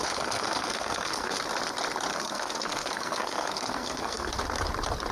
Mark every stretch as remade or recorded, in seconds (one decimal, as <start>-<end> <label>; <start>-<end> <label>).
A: 0.0-1.4 remade; 1.4-2.1 recorded; 2.1-4.3 remade; 4.3-5.1 recorded